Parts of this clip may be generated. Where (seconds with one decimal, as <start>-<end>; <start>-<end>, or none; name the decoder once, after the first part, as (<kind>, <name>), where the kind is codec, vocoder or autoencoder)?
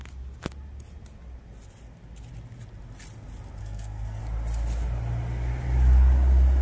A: 3.6-4.2 (codec, SNAC)